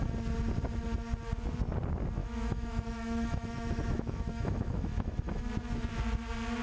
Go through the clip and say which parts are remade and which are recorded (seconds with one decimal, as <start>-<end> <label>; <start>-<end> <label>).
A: 0.0-2.2 recorded; 2.2-5.4 remade; 5.4-6.6 recorded

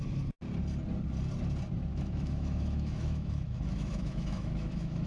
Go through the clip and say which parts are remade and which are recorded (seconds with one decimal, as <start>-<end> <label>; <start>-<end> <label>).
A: 0.0-1.9 recorded; 1.9-5.1 remade

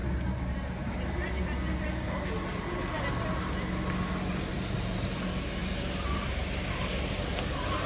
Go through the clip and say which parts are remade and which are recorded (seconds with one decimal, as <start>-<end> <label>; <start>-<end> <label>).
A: 0.0-7.9 recorded

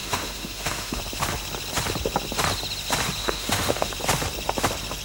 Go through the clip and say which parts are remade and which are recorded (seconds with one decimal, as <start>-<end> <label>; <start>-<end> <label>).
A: 0.0-1.0 remade; 1.0-3.2 recorded; 3.2-3.9 remade; 3.9-5.0 recorded

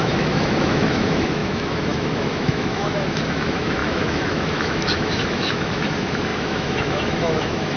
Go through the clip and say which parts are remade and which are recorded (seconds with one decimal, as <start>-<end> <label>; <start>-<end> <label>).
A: 0.0-7.8 remade